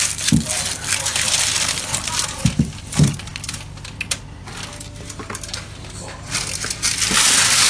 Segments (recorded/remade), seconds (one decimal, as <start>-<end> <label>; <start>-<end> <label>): 0.0-7.7 recorded